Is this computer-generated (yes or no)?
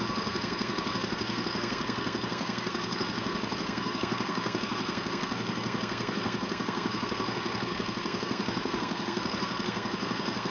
yes